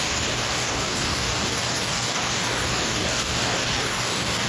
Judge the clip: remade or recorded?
remade